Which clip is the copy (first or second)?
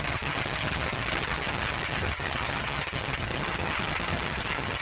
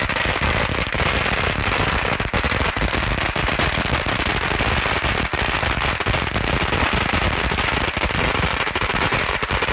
first